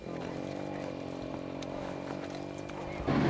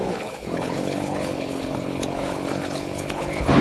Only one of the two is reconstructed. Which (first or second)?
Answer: second